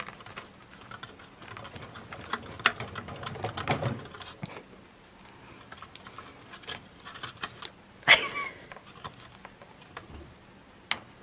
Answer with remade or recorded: recorded